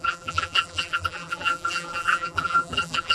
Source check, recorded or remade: remade